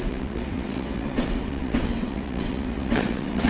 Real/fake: fake